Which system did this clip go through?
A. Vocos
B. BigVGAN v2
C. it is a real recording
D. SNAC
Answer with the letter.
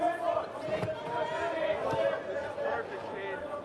C